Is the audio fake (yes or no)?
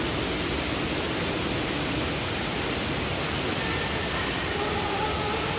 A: no